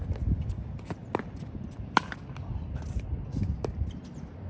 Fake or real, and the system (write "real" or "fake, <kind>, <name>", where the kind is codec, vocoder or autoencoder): real